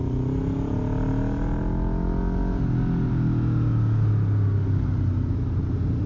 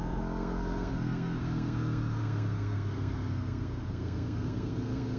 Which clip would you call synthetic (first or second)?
second